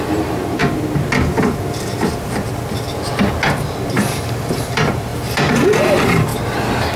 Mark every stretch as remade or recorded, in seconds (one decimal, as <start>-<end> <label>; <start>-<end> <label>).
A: 0.0-0.6 remade; 0.6-3.6 recorded; 3.6-6.3 remade; 6.3-7.0 recorded